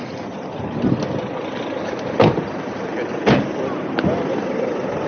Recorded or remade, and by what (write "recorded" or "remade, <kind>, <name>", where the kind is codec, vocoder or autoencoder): recorded